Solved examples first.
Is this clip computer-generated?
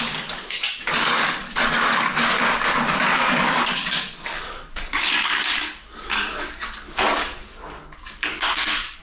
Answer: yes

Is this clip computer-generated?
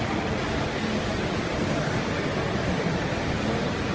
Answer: no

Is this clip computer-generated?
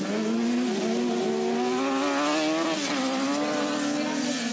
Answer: no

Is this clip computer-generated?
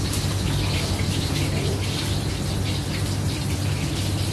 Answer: no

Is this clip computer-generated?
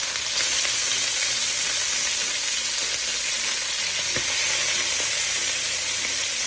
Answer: no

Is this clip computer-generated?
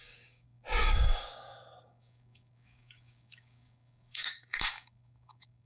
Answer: yes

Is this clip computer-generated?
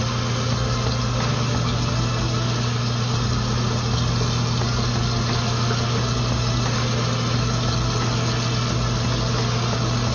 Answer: no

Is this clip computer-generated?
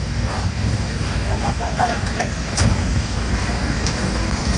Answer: yes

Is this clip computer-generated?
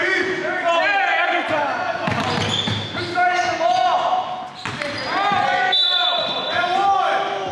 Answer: no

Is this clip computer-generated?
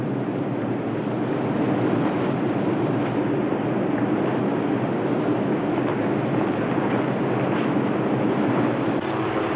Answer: no